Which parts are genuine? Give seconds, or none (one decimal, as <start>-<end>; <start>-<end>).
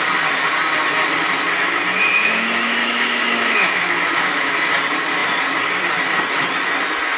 0.0-2.8; 4.5-7.2